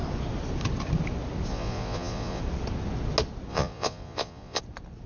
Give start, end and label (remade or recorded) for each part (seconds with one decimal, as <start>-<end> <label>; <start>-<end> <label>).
0.0-1.5 recorded; 1.5-2.4 remade; 2.4-3.5 recorded; 3.5-4.6 remade; 4.6-5.1 recorded